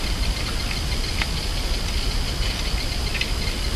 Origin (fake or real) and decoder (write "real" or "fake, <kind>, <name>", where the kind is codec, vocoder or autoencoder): real